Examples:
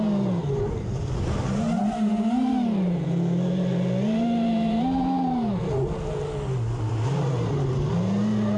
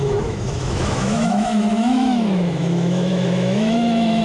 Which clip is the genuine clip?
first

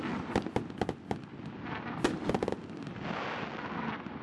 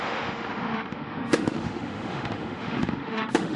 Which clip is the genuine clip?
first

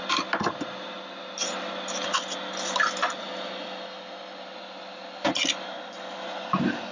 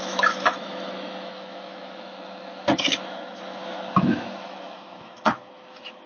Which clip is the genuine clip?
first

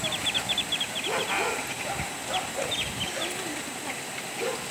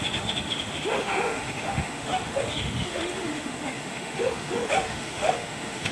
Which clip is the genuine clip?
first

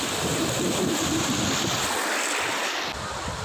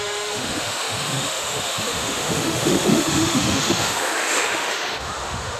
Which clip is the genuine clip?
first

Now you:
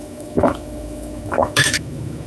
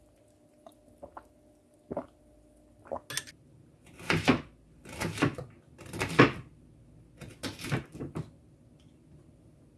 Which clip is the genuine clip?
second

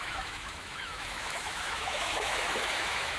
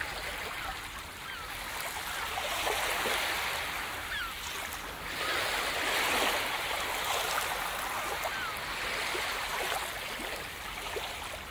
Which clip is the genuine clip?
second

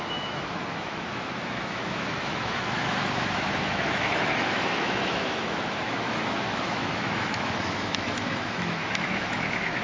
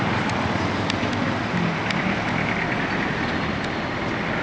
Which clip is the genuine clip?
second